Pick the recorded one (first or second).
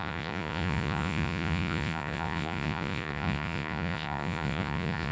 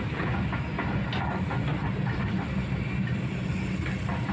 second